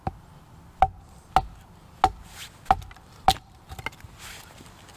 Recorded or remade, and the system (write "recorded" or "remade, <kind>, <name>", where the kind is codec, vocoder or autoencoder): recorded